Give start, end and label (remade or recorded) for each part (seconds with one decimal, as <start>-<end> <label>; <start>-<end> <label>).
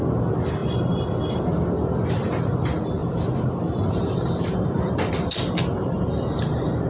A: 0.0-3.0 recorded; 3.0-4.8 remade; 4.8-6.9 recorded